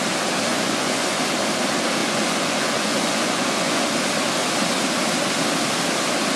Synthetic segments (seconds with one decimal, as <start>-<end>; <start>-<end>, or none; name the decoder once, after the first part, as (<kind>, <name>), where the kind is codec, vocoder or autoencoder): 0.5-1.3 (vocoder, Vocos); 2.0-3.9